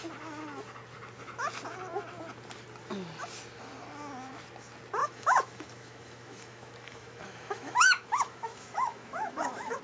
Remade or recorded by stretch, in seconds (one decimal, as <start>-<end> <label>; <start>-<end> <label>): 0.0-5.0 recorded; 5.0-9.8 remade